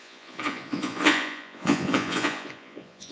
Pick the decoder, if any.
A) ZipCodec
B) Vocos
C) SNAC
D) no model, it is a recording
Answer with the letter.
B